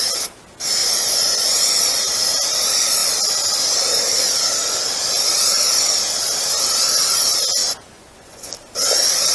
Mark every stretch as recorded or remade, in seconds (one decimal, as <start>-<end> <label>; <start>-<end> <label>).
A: 0.0-0.8 recorded; 0.8-1.8 remade; 1.8-7.6 recorded; 7.6-8.5 remade; 8.5-9.3 recorded